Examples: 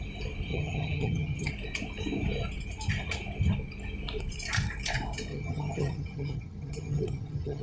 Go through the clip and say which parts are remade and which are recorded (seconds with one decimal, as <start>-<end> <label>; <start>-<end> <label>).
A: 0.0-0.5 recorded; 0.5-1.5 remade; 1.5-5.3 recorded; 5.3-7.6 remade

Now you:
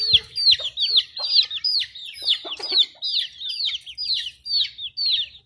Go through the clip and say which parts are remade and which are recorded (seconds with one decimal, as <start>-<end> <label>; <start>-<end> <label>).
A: 0.0-5.5 recorded

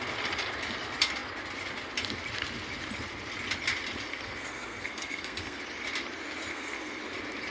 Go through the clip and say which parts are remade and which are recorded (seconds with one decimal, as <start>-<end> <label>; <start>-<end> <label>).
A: 0.0-4.1 recorded; 4.1-5.6 remade; 5.6-6.5 recorded; 6.5-7.0 remade; 7.0-7.5 recorded

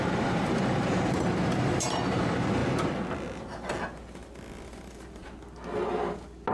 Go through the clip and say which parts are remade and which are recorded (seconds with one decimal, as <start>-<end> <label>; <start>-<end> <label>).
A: 0.0-2.6 remade; 2.6-4.7 recorded; 4.7-5.2 remade; 5.2-6.5 recorded

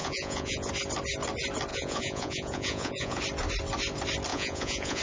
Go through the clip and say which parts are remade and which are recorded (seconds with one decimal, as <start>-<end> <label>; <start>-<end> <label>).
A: 0.0-0.7 remade; 0.7-1.7 recorded; 1.7-3.2 remade; 3.2-4.3 recorded; 4.3-5.0 remade